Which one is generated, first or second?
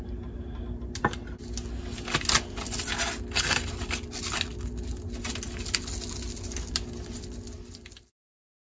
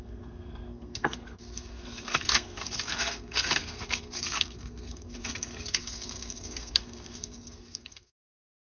second